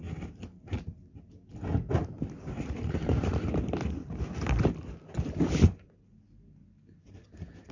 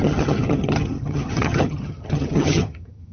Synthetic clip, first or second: second